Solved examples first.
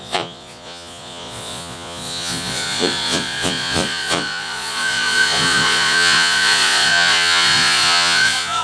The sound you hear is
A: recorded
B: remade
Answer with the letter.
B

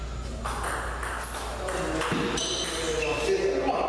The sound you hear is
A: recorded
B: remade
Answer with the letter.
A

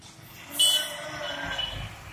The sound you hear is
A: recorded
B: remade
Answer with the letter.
A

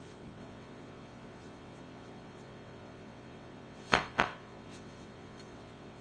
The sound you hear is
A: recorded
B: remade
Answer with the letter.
B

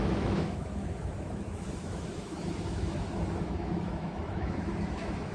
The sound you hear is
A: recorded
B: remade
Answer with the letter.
B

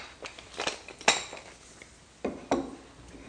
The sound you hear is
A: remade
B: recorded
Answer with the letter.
B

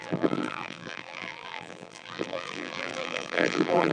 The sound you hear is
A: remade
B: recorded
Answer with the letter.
A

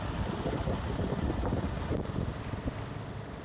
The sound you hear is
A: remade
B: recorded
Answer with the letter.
B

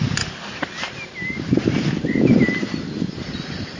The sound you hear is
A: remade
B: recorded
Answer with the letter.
B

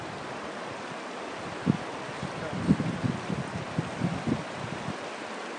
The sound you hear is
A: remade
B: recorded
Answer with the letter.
B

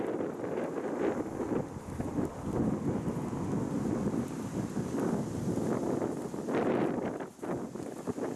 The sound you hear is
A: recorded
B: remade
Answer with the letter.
A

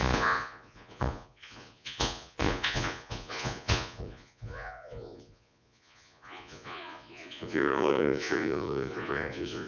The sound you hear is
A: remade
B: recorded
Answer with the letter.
A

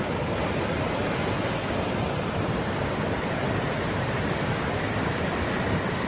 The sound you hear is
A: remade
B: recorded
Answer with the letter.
B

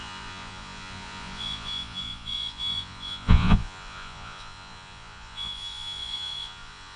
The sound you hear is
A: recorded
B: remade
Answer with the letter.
B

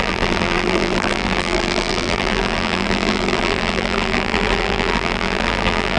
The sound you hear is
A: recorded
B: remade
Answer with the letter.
B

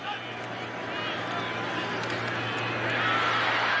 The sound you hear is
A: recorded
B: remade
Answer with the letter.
A